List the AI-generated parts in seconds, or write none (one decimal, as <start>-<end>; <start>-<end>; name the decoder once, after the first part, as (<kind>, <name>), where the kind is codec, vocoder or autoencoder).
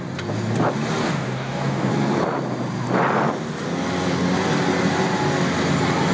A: 1.0-1.9 (codec, DAC)